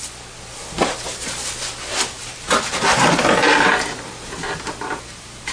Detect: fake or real real